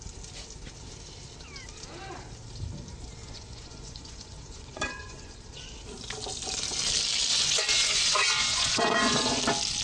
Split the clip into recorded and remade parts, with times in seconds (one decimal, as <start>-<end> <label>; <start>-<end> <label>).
0.0-3.2 recorded; 3.2-5.3 remade; 5.3-7.3 recorded; 7.3-9.4 remade; 9.4-9.8 recorded